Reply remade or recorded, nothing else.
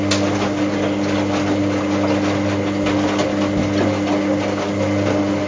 recorded